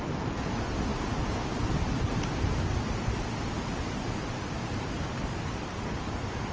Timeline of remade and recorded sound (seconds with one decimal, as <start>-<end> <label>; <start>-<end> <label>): 0.0-6.5 recorded